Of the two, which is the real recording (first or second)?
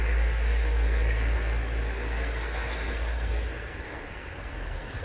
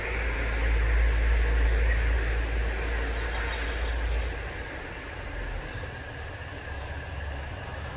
second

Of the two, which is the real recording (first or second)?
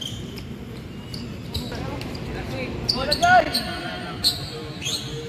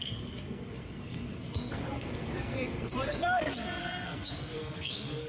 first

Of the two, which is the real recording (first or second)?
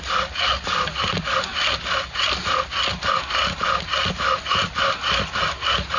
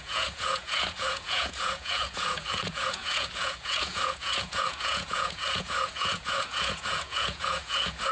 first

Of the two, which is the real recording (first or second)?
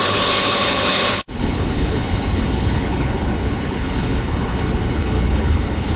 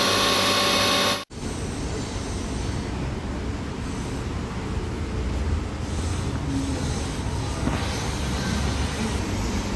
second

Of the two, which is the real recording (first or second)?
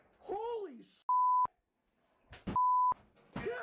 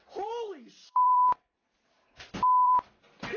first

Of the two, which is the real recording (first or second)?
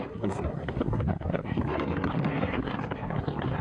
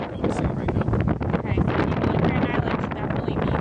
second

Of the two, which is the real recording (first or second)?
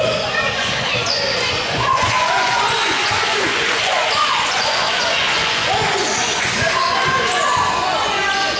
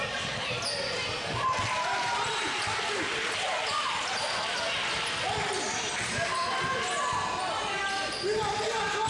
second